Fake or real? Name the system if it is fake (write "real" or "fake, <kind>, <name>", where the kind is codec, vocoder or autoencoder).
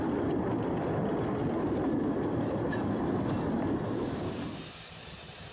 real